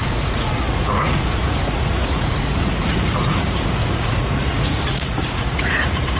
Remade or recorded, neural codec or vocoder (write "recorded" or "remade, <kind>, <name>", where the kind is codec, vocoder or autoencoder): remade, vocoder, Vocos